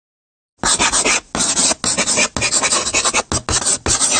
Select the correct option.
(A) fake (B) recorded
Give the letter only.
B